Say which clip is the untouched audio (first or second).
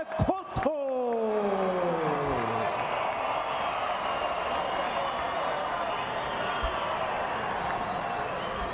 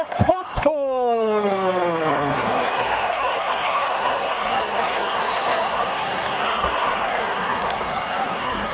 first